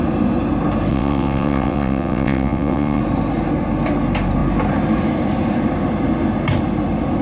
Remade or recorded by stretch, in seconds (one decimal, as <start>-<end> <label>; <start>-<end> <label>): 0.0-0.9 recorded; 0.9-3.0 remade; 3.0-7.2 recorded